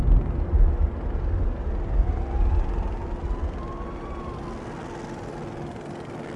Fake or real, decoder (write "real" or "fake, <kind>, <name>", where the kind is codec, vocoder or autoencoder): real